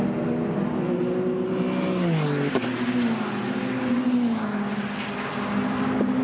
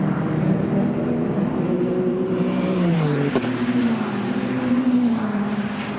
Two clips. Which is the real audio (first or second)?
first